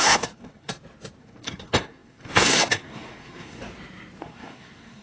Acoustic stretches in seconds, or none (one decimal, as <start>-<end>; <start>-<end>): 0.7-1.2; 3.6-4.2